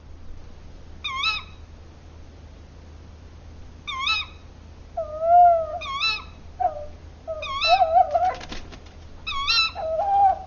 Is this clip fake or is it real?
real